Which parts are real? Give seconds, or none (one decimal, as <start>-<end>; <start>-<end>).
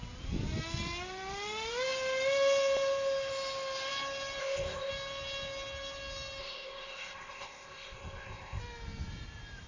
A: 0.0-4.4; 4.9-6.4; 8.6-9.7